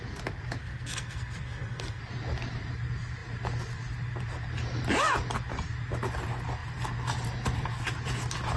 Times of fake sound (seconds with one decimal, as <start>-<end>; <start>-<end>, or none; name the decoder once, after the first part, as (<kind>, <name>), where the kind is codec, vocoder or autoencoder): 0.6-2.0 (codec, SNAC)

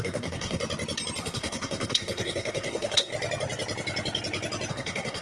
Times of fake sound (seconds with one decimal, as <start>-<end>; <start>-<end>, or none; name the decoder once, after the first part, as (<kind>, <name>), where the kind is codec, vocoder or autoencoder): 0.0-0.6 (codec, SNAC); 1.2-3.1; 4.7-5.2

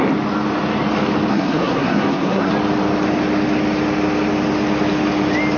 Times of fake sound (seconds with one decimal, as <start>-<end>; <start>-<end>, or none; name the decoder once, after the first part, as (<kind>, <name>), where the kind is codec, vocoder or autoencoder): 1.3-2.5 (codec, SNAC)